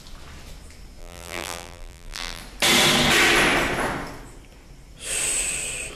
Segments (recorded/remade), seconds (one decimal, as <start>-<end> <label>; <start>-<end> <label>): 0.0-1.0 recorded; 1.0-2.4 remade; 2.4-6.0 recorded